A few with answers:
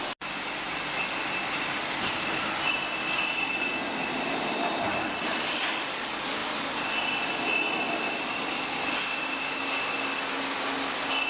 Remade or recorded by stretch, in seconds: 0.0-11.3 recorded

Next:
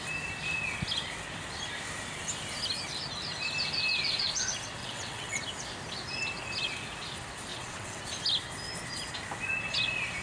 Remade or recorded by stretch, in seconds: 0.0-4.8 recorded; 4.8-5.4 remade; 5.4-7.5 recorded; 7.5-8.0 remade; 8.0-10.2 recorded

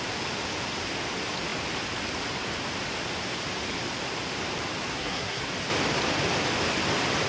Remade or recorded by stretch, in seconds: 0.0-4.9 recorded; 4.9-5.4 remade; 5.4-7.3 recorded

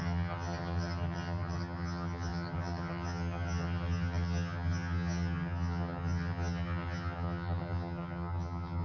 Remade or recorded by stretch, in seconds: 0.0-8.8 remade

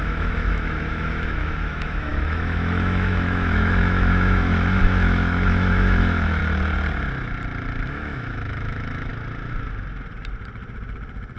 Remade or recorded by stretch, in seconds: 0.0-6.4 remade; 6.4-7.9 recorded; 7.9-9.1 remade; 9.1-11.4 recorded

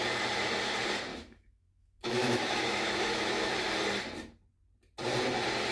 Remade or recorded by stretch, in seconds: 0.0-1.1 recorded; 1.1-3.5 remade; 3.5-5.7 recorded

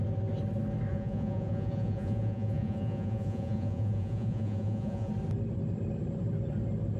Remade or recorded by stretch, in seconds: 0.0-0.9 recorded; 0.9-5.1 remade; 5.1-7.0 recorded

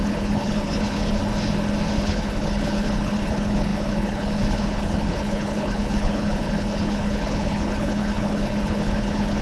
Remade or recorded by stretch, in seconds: 0.0-1.2 remade; 1.2-1.9 recorded; 1.9-9.4 remade